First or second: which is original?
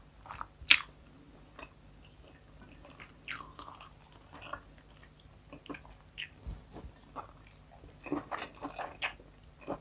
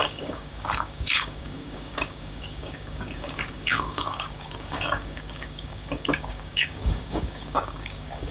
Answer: first